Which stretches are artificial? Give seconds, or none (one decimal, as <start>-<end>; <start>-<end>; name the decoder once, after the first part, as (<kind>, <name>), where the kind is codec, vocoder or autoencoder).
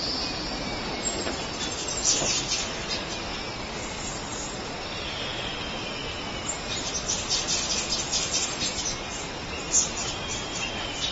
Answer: none